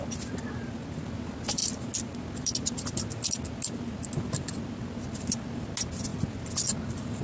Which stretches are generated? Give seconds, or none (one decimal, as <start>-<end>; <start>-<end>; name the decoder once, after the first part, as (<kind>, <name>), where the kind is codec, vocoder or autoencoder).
none